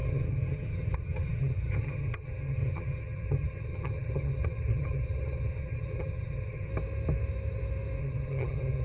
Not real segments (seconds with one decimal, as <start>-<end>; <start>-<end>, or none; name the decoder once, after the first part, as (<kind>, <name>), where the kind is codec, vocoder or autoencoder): 0.0-6.7 (vocoder, HiFi-GAN); 8.0-8.8